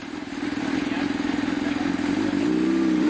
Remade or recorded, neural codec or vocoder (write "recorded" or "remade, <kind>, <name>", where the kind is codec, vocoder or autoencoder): recorded